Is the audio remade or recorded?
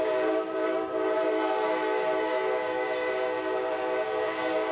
remade